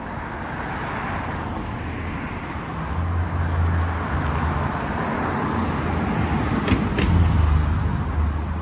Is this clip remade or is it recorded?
recorded